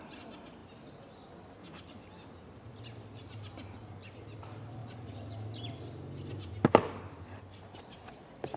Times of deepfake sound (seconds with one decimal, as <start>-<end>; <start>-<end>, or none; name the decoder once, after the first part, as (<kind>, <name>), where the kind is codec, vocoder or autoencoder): none